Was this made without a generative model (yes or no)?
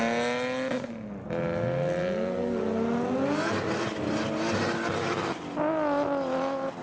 yes